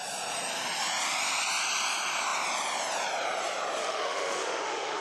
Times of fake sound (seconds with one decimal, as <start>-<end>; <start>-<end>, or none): 3.8-5.0